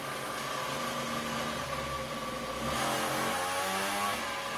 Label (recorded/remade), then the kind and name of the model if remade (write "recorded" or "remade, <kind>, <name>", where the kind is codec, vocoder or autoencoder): recorded